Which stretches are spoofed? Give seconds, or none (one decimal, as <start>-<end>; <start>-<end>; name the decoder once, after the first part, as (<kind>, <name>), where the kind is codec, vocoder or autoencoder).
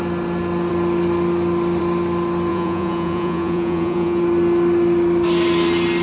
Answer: 2.5-4.2 (vocoder, Vocos)